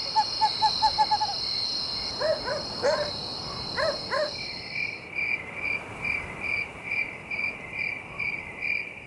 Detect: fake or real real